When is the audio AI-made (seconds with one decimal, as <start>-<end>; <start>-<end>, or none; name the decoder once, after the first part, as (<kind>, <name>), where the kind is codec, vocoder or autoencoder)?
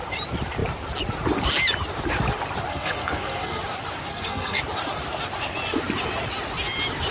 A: 2.7-3.6 (codec, SNAC); 4.1-4.6